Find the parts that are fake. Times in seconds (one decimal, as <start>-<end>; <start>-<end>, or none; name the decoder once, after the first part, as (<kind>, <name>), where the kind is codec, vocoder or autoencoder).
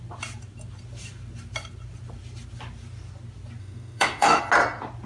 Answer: 3.6-4.4 (autoencoder, DAC-VAE)